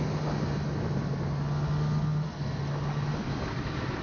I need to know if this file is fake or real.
real